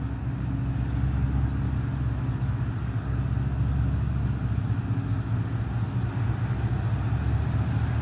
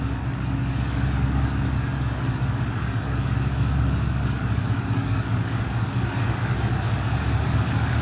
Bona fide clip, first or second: first